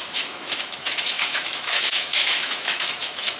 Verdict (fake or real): fake